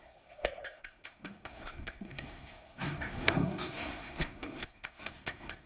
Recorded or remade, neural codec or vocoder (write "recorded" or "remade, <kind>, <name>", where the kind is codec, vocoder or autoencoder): remade, codec, SNAC